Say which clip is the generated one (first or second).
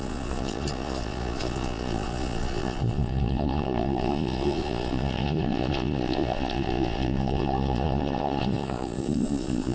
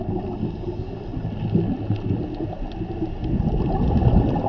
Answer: first